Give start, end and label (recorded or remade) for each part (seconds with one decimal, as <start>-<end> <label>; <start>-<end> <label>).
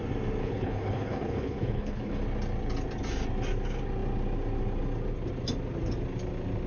0.0-0.4 recorded; 0.4-2.2 remade; 2.2-6.7 recorded